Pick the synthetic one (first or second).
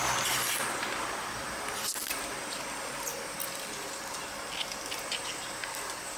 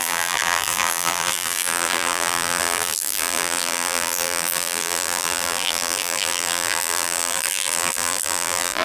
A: second